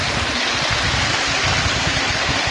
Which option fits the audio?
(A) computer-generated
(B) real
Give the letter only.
B